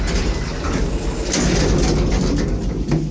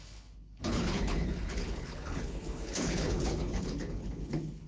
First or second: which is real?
first